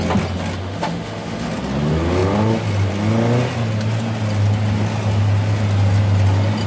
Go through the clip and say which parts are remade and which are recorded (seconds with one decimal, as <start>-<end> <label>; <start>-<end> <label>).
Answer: 0.0-0.6 recorded; 0.6-1.5 remade; 1.5-6.7 recorded